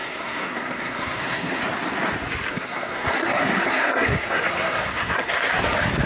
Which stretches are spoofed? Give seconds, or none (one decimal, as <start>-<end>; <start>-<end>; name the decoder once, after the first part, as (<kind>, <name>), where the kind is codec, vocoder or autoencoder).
0.0-1.6 (codec, SNAC); 2.5-5.3